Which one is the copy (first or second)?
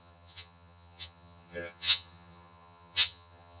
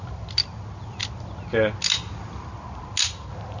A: first